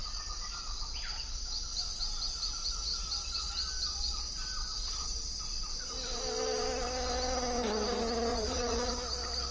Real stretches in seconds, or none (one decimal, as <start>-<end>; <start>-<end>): 0.6-8.3; 8.9-9.5